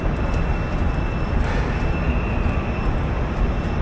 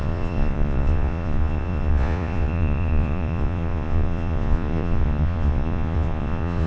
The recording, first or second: first